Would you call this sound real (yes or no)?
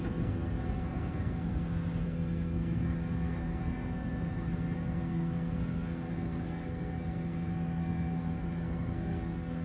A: no